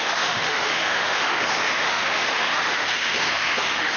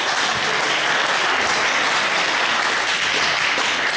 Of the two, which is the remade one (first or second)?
first